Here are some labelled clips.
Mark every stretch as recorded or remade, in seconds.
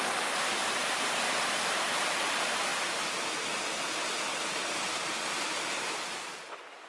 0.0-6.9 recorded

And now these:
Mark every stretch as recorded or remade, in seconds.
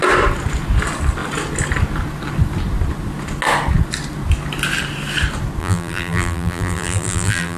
0.0-5.6 recorded; 5.6-7.6 remade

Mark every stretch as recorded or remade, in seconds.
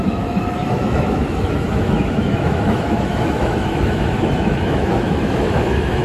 0.0-6.0 remade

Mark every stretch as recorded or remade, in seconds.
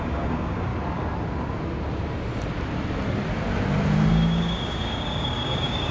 0.0-0.7 remade; 0.7-4.1 recorded; 4.1-5.9 remade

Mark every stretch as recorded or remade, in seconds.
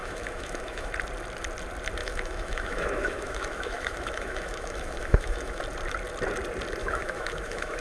0.0-0.9 remade; 0.9-2.0 recorded; 2.0-5.6 remade; 5.6-6.8 recorded; 6.8-7.8 remade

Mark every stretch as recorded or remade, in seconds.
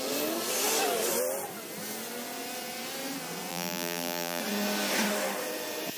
0.0-3.5 recorded; 3.5-4.4 remade; 4.4-6.0 recorded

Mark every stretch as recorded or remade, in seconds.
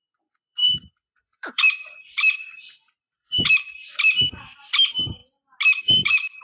0.0-5.2 remade; 5.2-5.8 recorded; 5.8-6.4 remade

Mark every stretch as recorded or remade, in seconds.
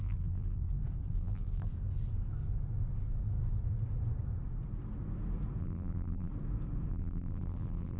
0.0-0.6 remade; 0.6-1.1 recorded; 1.1-1.7 remade; 1.7-5.6 recorded; 5.6-6.3 remade; 6.3-6.9 recorded; 6.9-8.0 remade